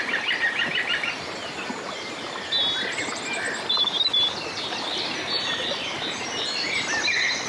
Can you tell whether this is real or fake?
fake